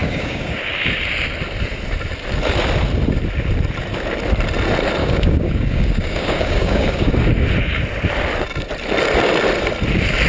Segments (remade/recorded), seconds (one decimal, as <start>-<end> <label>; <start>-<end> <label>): 0.0-0.6 remade; 0.6-5.0 recorded; 5.0-7.1 remade; 7.1-10.3 recorded